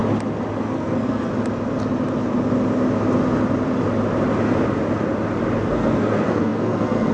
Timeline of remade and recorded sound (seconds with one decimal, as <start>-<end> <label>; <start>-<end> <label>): 0.0-0.6 recorded; 0.6-1.3 remade; 1.3-5.6 recorded; 5.6-7.1 remade